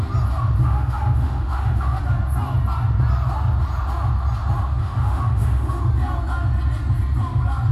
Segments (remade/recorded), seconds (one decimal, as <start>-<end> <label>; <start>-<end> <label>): 0.0-0.6 recorded; 0.6-2.0 remade; 2.0-4.8 recorded; 4.8-5.8 remade; 5.8-7.7 recorded